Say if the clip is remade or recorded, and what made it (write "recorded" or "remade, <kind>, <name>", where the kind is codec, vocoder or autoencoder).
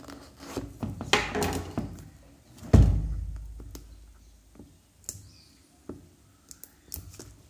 recorded